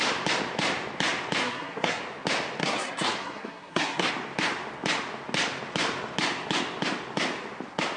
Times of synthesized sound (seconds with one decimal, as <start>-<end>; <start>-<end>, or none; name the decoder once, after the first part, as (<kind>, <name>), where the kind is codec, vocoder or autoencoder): 1.4-2.0 (codec, SNAC); 2.6-4.1